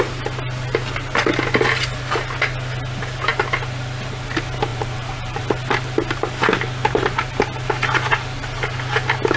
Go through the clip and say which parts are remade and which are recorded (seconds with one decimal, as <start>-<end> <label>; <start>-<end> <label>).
0.0-4.7 recorded; 4.7-5.4 remade; 5.4-9.4 recorded